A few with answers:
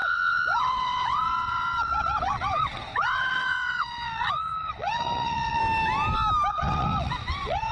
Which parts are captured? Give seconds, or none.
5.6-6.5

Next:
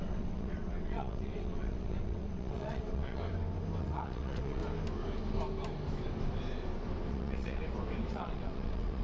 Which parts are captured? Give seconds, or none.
3.2-3.8; 4.6-7.1; 7.6-8.1

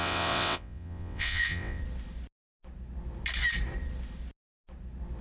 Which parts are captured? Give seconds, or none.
1.8-5.2

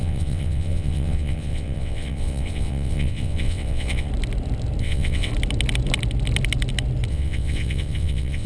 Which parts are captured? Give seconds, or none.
4.1-4.8; 5.3-7.1

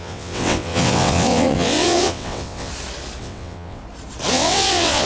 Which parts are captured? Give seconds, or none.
2.7-3.2; 3.8-4.3

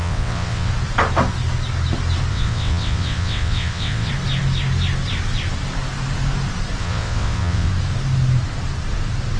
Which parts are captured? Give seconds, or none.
0.7-2.3; 4.1-6.8; 7.7-9.4

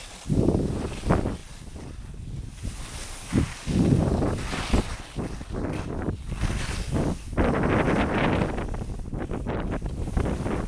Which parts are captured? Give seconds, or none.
0.0-10.7